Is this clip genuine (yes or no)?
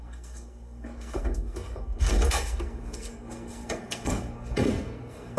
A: no